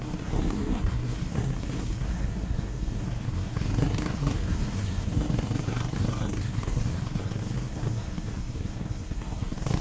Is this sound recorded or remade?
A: remade